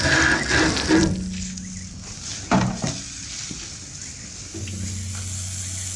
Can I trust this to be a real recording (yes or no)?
yes